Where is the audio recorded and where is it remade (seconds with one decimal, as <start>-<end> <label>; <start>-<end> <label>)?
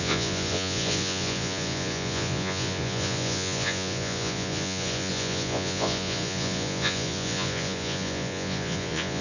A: 0.0-9.2 remade